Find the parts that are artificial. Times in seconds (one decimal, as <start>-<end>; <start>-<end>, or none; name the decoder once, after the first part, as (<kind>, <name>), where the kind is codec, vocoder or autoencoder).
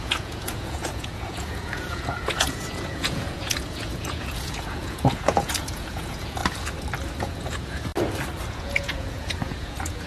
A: 0.0-6.4 (vocoder, Vocos); 7.2-7.9; 8.5-10.1